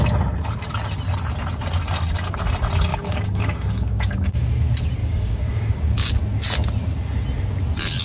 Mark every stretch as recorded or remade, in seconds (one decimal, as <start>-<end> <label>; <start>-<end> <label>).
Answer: 0.0-2.9 recorded; 2.9-4.5 remade; 4.5-5.0 recorded; 5.0-6.1 remade; 6.1-8.0 recorded